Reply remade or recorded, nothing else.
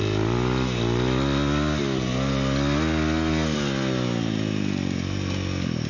recorded